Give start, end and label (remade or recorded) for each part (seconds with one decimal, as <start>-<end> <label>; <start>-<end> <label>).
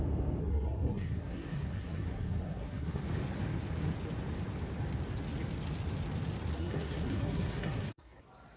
0.0-0.4 recorded; 0.4-3.0 remade; 3.0-6.5 recorded; 6.5-8.2 remade; 8.2-8.6 recorded